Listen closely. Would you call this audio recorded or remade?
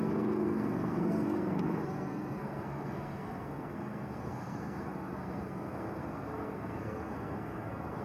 remade